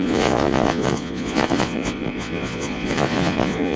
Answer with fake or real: fake